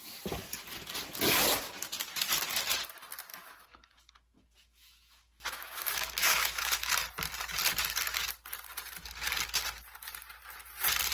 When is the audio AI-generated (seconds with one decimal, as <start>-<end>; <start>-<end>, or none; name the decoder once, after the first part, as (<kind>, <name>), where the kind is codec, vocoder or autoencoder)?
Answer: 3.3-6.9 (autoencoder, DAC-VAE)